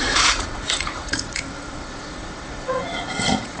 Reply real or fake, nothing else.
fake